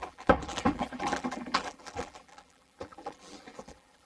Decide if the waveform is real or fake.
fake